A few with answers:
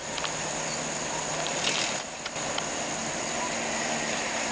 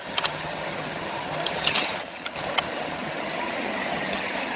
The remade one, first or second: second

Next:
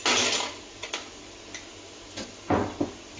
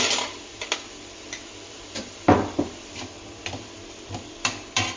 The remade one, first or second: second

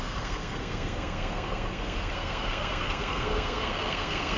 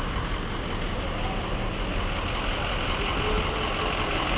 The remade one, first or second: first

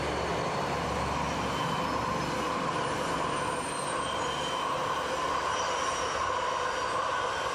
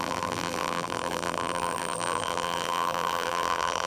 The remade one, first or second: second